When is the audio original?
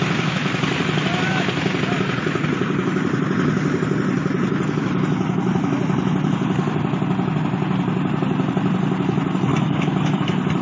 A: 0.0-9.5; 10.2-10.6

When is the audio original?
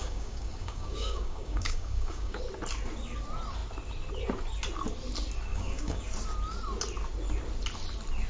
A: 2.4-5.5; 6.0-8.3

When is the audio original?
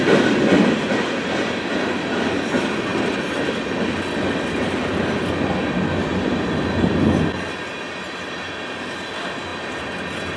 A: 0.0-10.4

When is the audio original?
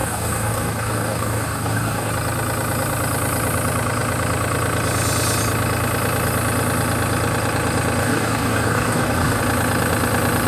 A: 2.1-8.0; 9.4-10.5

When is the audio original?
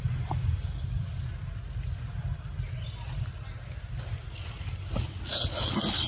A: 0.0-6.1